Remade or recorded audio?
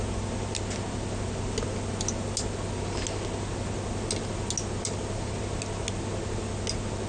recorded